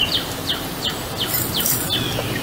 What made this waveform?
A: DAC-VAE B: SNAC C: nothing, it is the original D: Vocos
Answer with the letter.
C